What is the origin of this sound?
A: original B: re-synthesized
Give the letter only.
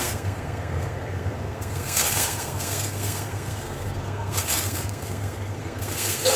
B